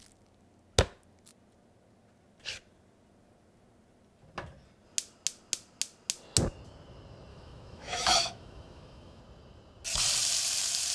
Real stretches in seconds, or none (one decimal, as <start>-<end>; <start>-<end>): 0.0-7.3; 9.2-10.9